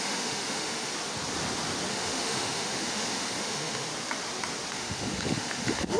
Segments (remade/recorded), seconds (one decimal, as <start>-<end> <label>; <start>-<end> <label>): 0.0-0.9 remade; 0.9-1.9 recorded; 1.9-3.9 remade; 3.9-4.7 recorded; 4.7-6.0 remade